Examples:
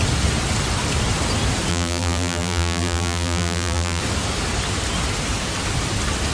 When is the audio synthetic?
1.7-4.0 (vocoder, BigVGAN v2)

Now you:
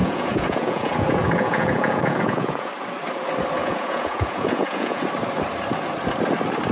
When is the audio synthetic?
0.0-2.7 (vocoder, Vocos); 3.6-5.0

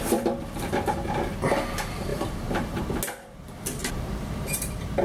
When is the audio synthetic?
2.1-2.8 (vocoder, BigVGAN v2); 3.8-5.0

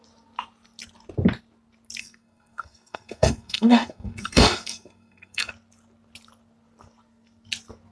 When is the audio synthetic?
2.0-5.5 (codec, SNAC)